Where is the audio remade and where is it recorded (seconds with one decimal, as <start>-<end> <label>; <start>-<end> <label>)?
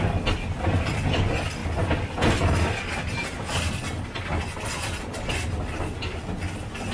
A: 0.0-6.9 recorded